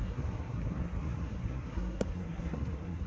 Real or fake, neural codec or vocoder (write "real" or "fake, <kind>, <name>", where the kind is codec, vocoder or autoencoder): fake, codec, SNAC